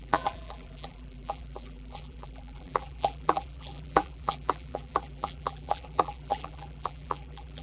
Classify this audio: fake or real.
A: fake